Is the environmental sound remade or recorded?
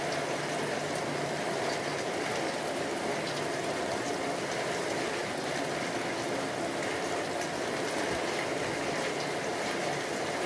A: recorded